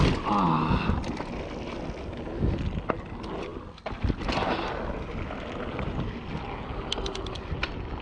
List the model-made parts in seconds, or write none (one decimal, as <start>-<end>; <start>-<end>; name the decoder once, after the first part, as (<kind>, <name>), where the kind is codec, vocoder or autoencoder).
none